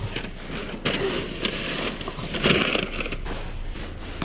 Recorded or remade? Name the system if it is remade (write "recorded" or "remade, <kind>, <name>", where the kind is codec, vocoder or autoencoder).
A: recorded